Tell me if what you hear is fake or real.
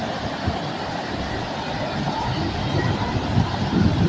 real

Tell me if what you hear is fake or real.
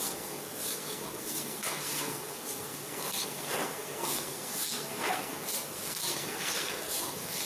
fake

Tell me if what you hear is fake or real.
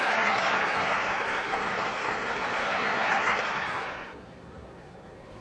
fake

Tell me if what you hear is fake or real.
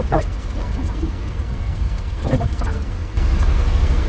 fake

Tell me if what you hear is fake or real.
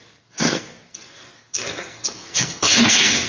fake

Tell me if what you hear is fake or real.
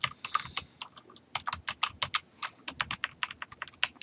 real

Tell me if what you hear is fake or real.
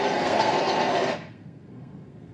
fake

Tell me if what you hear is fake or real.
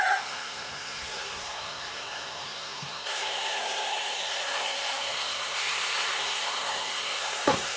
fake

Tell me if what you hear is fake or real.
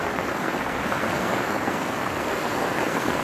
fake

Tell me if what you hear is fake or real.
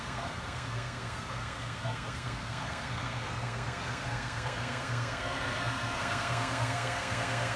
fake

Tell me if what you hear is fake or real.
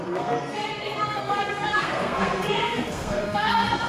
fake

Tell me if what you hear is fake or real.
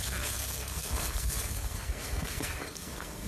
fake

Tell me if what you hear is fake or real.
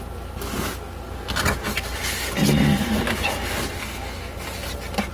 real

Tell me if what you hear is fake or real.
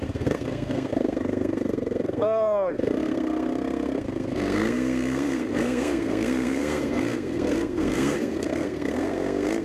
fake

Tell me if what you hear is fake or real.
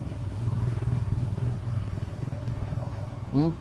fake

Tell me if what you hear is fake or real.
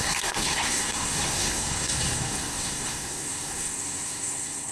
fake